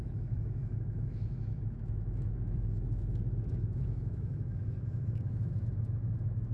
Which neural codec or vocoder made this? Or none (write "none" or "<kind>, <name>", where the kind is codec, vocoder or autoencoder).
autoencoder, DAC-VAE